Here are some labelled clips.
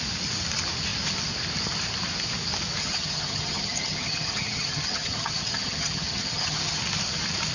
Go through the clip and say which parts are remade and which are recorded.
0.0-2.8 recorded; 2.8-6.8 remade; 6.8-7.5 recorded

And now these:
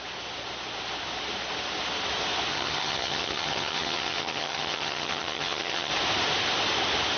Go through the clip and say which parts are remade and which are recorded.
0.0-2.5 recorded; 2.5-5.9 remade; 5.9-7.2 recorded

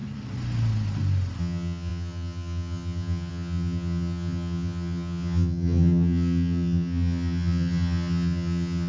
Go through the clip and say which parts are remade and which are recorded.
0.0-1.4 recorded; 1.4-8.9 remade

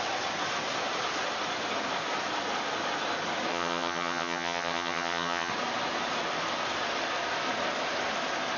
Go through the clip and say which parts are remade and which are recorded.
0.0-3.5 recorded; 3.5-5.5 remade; 5.5-8.6 recorded

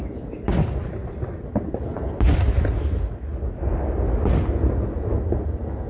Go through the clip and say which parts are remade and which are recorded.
0.0-5.9 recorded

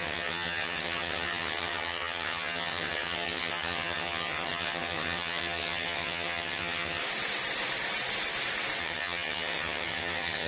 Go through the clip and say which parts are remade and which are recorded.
0.0-7.0 remade; 7.0-8.8 recorded; 8.8-10.5 remade

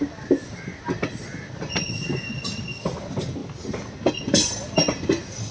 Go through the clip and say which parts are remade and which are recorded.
0.0-5.5 recorded